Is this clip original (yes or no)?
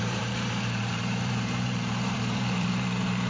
no